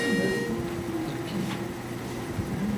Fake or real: real